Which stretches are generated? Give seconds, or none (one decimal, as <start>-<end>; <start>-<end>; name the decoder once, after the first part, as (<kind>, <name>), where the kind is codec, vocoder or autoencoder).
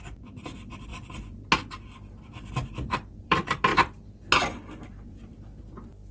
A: 0.0-0.9 (vocoder, BigVGAN v2); 2.2-3.7; 4.4-6.1